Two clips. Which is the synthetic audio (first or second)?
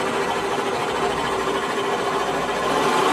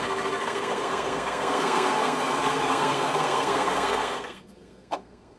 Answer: second